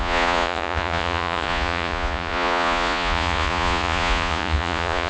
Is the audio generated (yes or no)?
yes